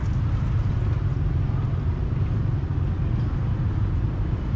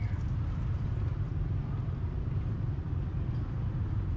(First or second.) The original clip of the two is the first